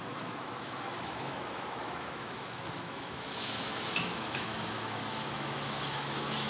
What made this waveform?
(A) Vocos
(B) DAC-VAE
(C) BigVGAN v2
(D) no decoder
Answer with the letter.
B